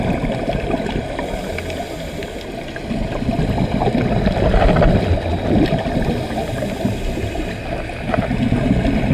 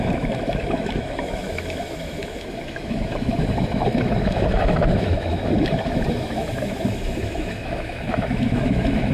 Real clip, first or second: first